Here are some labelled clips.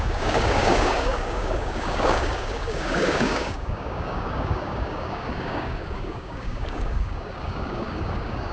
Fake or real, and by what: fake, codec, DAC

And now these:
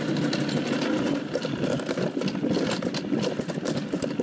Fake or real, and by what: real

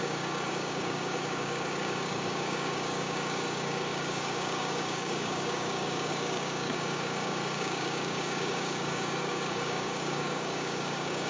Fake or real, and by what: fake, codec, DAC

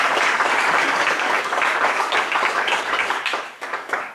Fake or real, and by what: fake, codec, DAC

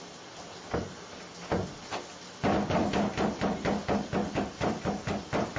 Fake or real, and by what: real